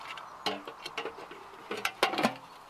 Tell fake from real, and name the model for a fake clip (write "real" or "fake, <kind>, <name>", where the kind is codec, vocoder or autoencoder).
real